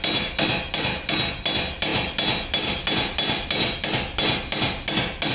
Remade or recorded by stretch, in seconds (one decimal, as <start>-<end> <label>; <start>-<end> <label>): 0.0-5.3 recorded